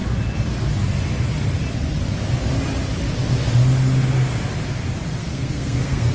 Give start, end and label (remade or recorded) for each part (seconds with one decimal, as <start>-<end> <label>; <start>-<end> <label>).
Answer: 0.0-5.2 recorded; 5.2-6.1 remade